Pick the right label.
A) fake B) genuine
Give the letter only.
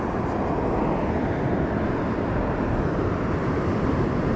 B